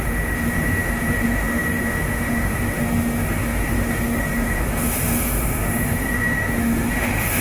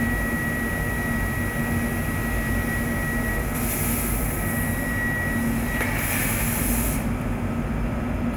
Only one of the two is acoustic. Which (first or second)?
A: second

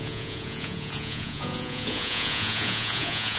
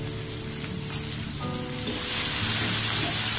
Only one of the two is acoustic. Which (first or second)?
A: second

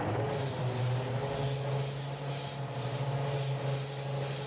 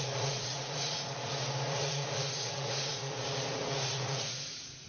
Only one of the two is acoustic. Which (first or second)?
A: first